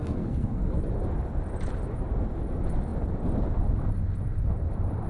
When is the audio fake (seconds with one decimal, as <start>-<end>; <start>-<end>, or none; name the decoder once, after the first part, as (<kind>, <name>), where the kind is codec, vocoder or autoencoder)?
0.0-0.8 (codec, SNAC)